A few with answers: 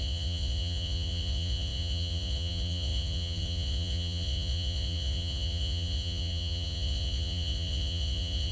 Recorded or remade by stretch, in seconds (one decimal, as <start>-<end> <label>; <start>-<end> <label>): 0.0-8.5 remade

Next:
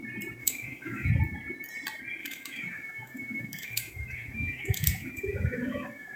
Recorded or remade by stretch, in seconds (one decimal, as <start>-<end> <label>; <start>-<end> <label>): 0.0-0.4 recorded; 0.4-1.1 remade; 1.1-2.2 recorded; 2.2-6.2 remade

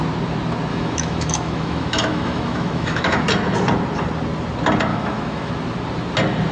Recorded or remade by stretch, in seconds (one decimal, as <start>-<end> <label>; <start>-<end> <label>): 0.0-0.7 recorded; 0.7-3.3 remade; 3.3-4.9 recorded; 4.9-5.5 remade; 5.5-6.5 recorded

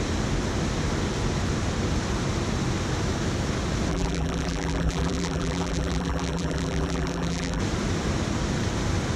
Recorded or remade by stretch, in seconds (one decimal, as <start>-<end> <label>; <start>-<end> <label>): 0.0-3.9 recorded; 3.9-7.6 remade; 7.6-9.2 recorded

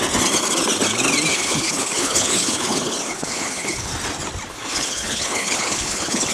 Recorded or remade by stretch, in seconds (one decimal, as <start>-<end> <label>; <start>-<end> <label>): 0.0-1.3 recorded; 1.3-3.9 remade; 3.9-4.5 recorded; 4.5-6.3 remade